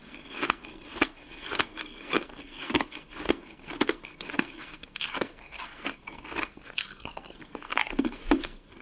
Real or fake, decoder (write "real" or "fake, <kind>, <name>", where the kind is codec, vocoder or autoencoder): fake, codec, SNAC